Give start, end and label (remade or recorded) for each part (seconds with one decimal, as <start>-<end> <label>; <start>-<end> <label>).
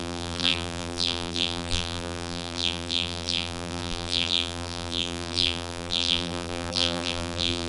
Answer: 0.0-7.7 remade